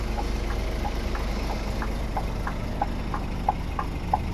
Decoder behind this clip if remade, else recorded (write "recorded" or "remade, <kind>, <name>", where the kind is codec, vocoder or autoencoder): recorded